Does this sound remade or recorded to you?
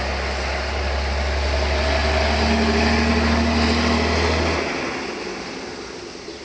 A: recorded